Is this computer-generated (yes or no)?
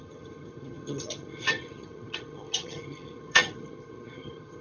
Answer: yes